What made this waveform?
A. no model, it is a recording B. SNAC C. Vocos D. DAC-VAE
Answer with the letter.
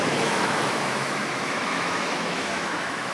D